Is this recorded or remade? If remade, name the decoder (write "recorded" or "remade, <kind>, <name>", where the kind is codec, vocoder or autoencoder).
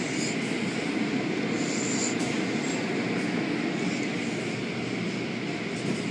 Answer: recorded